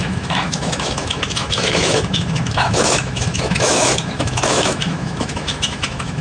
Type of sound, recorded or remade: remade